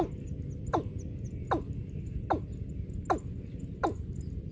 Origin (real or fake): real